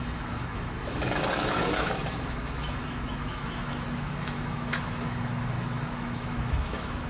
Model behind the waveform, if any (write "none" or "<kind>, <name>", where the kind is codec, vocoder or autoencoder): autoencoder, DAC-VAE